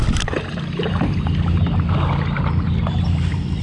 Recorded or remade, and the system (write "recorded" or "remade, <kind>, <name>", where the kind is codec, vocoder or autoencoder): recorded